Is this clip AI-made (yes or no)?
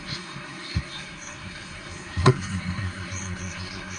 yes